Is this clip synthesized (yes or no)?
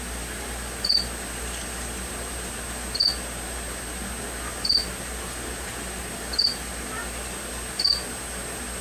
no